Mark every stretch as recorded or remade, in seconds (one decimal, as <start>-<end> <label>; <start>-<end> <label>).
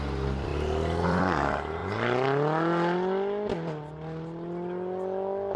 0.0-0.5 recorded; 0.5-1.2 remade; 1.2-5.6 recorded